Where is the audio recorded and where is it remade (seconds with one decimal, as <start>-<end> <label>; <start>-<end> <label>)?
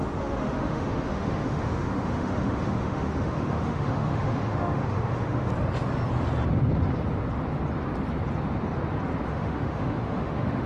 0.0-5.5 remade; 5.5-9.3 recorded; 9.3-10.7 remade